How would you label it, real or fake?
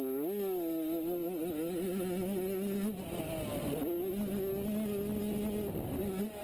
real